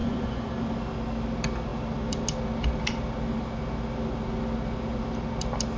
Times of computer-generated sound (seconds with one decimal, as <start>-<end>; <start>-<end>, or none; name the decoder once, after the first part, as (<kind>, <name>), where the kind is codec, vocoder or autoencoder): 0.0-0.5 (vocoder, Vocos)